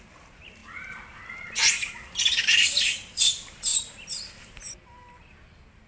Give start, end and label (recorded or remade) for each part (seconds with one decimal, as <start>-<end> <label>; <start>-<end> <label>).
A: 0.0-0.6 recorded; 0.6-1.9 remade; 1.9-5.9 recorded